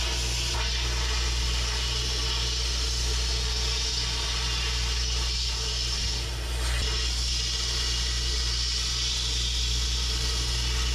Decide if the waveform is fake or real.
real